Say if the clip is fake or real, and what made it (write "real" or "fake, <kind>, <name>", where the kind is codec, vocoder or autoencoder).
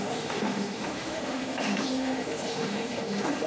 fake, autoencoder, DAC-VAE